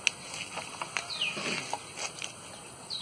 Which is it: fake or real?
real